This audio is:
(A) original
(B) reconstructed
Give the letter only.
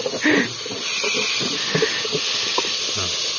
A